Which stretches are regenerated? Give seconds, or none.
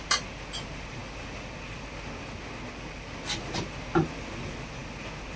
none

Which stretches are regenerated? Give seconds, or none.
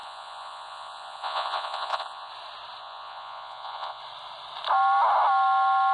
0.0-2.3 (vocoder, Vocos); 2.8-4.0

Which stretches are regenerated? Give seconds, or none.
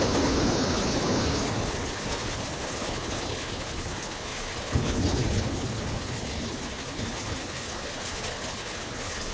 0.0-9.3 (codec, HILCodec)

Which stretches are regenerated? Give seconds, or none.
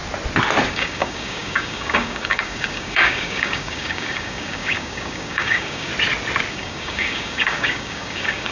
0.7-5.9 (codec, DAC); 6.5-8.5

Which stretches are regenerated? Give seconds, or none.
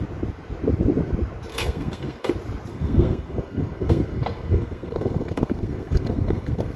1.5-2.3 (codec, SNAC); 2.7-6.8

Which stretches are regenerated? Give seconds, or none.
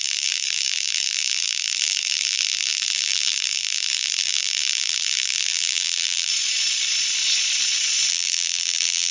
0.0-6.3 (vocoder, BigVGAN v2); 8.1-9.1